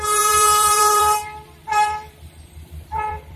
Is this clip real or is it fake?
fake